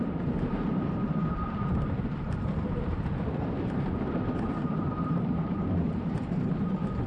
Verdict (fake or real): fake